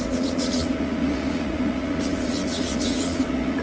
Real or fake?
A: fake